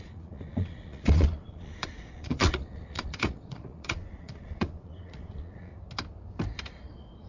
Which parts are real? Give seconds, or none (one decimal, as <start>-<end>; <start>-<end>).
5.7-6.7